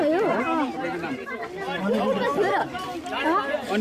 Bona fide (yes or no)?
yes